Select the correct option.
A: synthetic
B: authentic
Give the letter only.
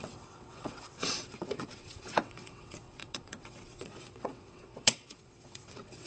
A